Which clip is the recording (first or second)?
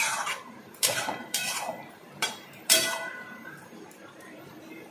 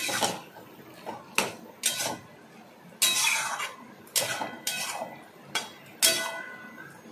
second